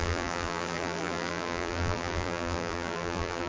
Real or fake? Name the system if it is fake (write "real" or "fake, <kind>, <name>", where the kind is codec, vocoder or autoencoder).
fake, vocoder, BigVGAN v2